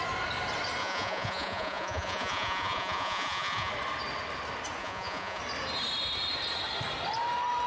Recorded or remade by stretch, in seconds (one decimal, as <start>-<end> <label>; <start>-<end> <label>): 0.0-0.8 recorded; 0.8-3.7 remade; 3.7-4.8 recorded; 4.8-5.4 remade; 5.4-7.7 recorded